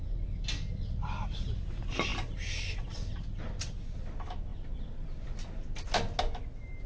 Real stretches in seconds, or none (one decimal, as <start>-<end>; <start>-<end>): 0.0-6.9